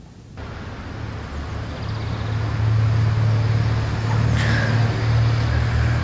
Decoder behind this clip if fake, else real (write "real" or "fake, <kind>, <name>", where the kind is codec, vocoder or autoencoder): real